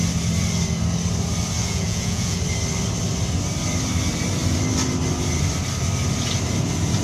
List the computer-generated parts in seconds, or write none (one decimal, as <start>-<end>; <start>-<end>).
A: 1.6-2.4